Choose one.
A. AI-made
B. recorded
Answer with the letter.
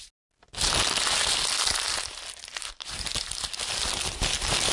B